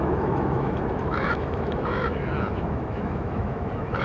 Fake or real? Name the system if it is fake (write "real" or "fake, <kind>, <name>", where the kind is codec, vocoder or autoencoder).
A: fake, autoencoder, DAC-VAE